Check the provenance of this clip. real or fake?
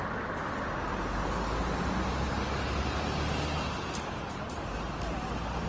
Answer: real